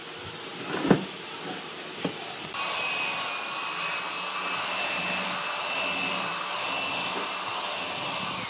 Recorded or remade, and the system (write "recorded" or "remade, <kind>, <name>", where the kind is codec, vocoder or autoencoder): recorded